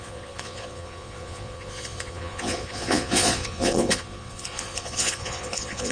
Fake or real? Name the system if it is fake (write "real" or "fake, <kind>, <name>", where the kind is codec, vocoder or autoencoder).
fake, vocoder, Vocos